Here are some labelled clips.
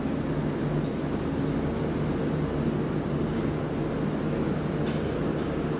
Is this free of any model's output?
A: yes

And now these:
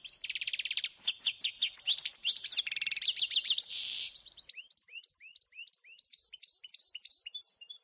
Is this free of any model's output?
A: no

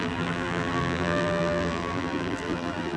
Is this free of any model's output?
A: no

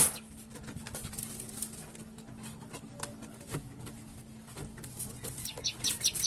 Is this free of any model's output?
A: yes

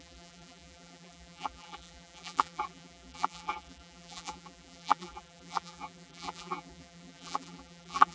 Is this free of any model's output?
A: no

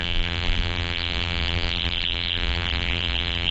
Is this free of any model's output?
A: no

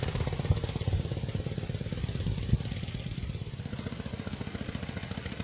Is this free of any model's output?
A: yes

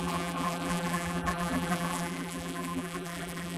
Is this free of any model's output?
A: no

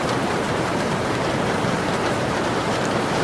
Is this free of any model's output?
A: no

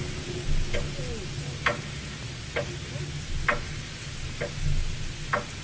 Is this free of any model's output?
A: yes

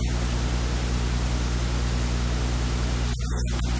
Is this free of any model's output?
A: yes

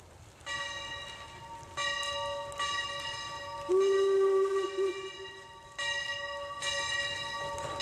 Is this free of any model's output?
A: yes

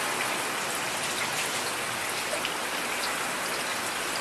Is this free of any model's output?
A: yes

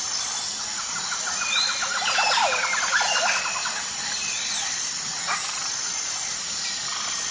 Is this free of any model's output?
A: yes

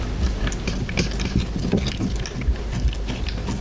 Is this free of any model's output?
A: yes